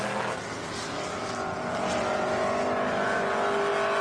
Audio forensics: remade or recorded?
recorded